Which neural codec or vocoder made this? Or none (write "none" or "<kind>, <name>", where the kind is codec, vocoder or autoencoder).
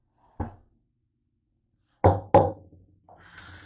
none